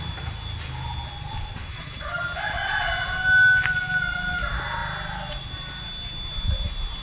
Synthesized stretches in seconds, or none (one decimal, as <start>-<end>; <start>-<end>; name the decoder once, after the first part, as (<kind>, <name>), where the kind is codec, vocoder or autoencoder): 1.6-2.2 (autoencoder, DAC-VAE)